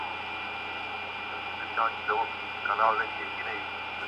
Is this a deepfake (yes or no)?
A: no